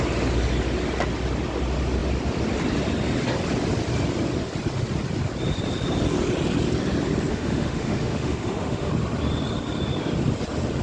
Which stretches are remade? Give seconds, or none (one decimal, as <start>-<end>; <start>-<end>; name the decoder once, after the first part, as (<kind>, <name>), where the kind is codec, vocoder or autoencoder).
7.3-8.9 (autoencoder, DAC-VAE)